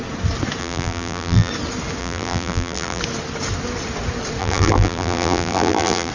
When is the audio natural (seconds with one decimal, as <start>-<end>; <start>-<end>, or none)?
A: 0.0-0.6; 1.5-2.0; 3.0-4.4